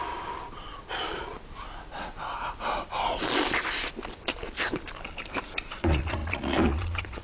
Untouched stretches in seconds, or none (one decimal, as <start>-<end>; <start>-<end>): 1.3-5.6